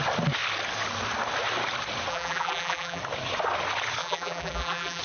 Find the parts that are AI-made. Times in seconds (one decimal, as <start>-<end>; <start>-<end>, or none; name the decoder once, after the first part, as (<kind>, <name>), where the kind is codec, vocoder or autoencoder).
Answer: 2.1-3.0 (vocoder, BigVGAN v2); 4.0-5.0